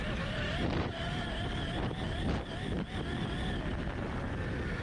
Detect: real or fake real